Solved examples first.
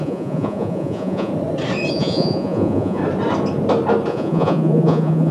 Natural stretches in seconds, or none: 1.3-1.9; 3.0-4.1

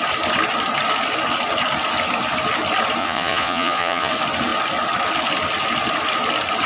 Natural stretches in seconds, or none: 0.0-3.0; 4.1-6.7

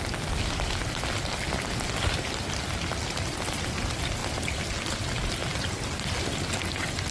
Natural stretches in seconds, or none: 0.0-7.1

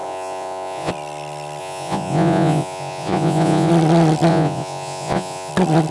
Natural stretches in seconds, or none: 0.9-1.6; 3.7-4.3; 5.5-5.9